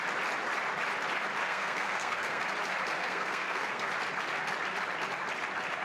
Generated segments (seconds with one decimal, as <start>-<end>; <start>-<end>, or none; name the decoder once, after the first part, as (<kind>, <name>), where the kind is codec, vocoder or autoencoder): 1.4-2.4 (codec, SNAC); 3.0-3.9